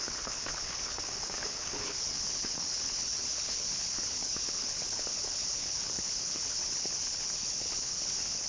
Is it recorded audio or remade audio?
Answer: remade